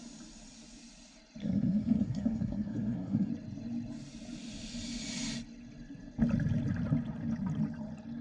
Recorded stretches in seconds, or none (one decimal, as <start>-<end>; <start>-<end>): 0.0-1.4; 3.3-8.2